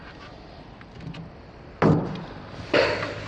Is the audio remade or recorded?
recorded